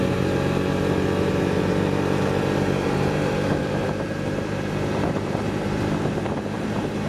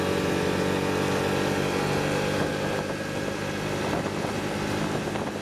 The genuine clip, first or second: second